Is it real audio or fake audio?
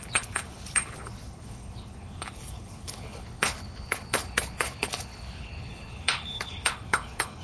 fake